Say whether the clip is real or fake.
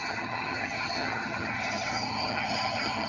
fake